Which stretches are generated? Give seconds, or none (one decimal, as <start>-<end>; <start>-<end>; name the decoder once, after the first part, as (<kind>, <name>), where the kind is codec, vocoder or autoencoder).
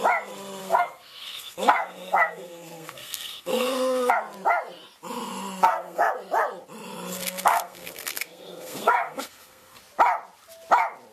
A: 0.6-4.1 (codec, SNAC); 5.6-6.1; 7.1-9.8